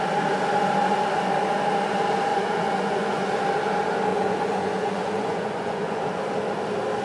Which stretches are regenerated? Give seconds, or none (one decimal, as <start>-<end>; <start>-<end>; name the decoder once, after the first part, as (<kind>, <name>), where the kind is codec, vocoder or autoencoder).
2.3-3.3 (vocoder, Vocos); 4.1-6.0